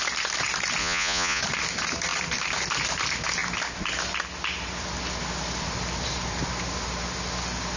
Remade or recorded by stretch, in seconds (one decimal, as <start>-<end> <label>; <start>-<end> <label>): 0.0-0.8 recorded; 0.8-1.4 remade; 1.4-7.8 recorded